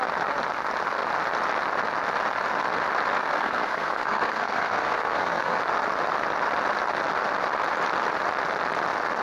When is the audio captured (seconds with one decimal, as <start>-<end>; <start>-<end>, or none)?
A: 0.0-3.2; 5.6-9.2